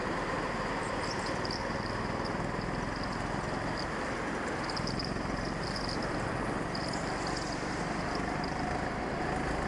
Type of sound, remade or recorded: recorded